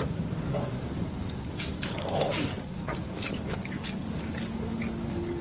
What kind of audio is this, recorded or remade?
remade